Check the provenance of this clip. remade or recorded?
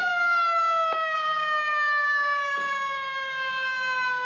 remade